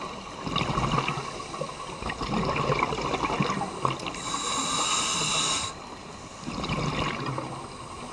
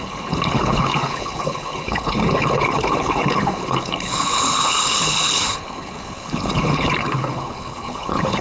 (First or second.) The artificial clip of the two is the second